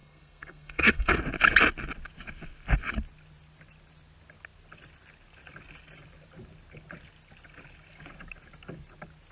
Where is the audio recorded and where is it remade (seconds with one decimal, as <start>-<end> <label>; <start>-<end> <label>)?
0.0-1.2 remade; 1.2-9.3 recorded